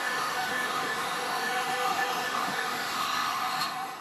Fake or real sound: fake